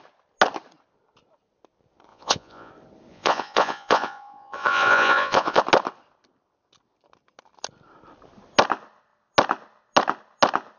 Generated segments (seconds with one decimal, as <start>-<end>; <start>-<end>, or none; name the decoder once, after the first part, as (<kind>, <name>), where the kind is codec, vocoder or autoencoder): 2.1-2.7 (vocoder, Vocos); 3.1-5.6